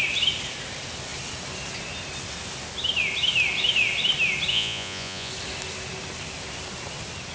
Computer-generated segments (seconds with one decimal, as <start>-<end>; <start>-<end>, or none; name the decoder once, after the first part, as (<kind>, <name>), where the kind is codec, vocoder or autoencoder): 4.5-5.3 (vocoder, Vocos)